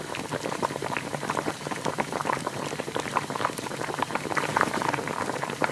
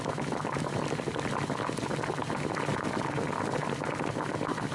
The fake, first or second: first